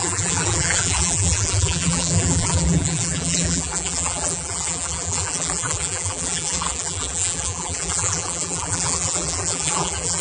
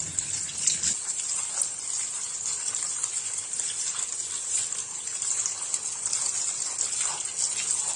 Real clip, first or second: second